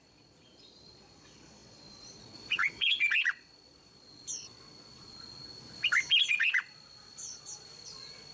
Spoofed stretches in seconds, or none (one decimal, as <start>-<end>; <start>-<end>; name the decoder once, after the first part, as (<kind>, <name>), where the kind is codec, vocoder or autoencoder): 0.0-5.4 (vocoder, Vocos); 6.3-8.3